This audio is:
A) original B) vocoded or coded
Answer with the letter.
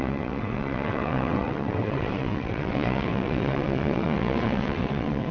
B